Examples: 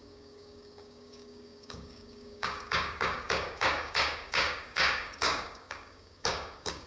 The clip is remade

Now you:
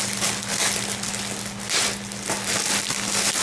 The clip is recorded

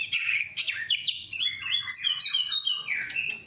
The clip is remade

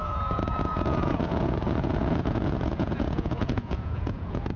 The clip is remade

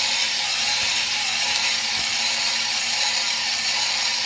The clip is recorded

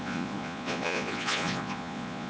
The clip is remade